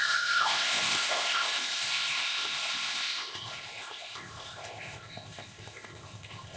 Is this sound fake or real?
fake